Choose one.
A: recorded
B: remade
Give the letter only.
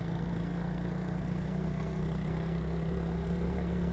B